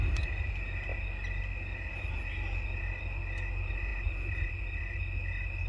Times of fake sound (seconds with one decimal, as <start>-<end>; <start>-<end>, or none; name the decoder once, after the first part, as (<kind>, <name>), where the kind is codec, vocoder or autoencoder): none